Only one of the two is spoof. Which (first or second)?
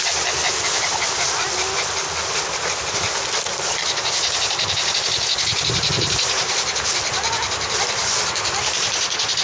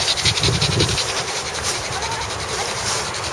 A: second